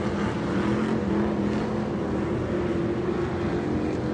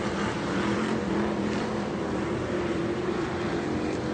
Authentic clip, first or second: first